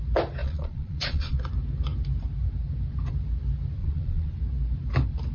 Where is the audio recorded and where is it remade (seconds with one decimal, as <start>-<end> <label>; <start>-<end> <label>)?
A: 0.0-0.4 recorded; 0.4-1.4 remade; 1.4-3.8 recorded; 3.8-4.3 remade; 4.3-5.3 recorded